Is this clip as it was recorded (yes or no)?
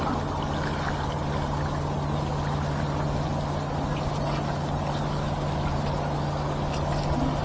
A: yes